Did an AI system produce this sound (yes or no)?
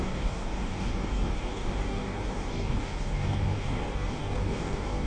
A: yes